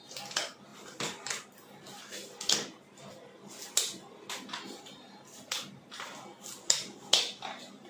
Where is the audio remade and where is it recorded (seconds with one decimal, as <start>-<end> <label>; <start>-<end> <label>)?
0.0-7.9 recorded